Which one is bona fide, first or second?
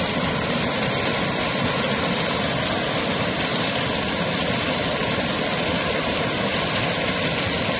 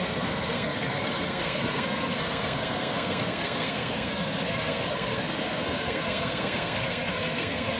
first